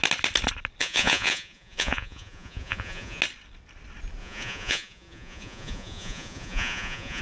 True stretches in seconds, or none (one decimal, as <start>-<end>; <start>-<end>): 0.0-0.8; 3.2-4.2